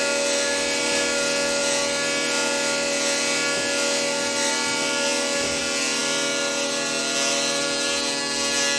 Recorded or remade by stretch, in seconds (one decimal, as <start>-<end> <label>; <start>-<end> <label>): 0.0-8.8 recorded